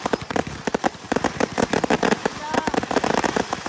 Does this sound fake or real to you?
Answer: fake